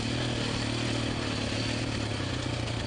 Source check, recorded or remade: recorded